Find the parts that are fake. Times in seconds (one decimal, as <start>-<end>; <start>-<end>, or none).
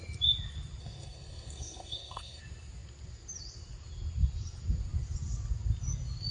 0.8-2.4